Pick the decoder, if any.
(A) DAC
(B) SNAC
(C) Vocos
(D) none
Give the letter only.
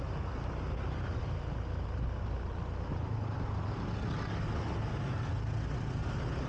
D